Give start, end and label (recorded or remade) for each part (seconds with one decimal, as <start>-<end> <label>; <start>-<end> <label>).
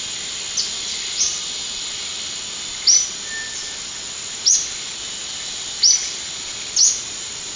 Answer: 0.0-7.6 recorded